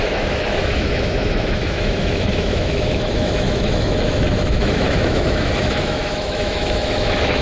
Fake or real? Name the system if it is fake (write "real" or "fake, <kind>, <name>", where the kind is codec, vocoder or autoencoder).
fake, autoencoder, DAC-VAE